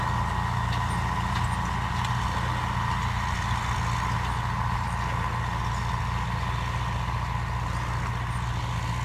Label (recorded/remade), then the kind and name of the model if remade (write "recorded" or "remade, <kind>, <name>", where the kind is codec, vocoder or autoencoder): recorded